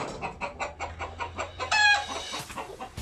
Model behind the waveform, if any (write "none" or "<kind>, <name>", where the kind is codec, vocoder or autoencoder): none